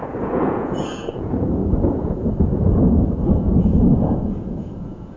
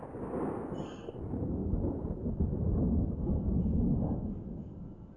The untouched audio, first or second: second